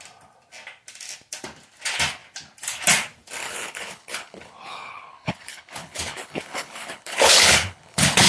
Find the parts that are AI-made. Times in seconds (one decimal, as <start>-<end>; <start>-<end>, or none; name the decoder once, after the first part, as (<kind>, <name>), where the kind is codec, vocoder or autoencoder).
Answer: 3.4-8.3 (codec, HILCodec)